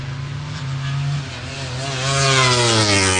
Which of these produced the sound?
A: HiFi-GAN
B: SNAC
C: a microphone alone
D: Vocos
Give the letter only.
C